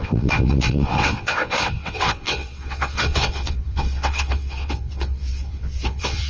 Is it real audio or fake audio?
fake